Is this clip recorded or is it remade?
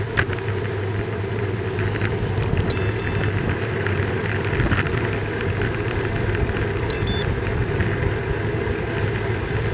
recorded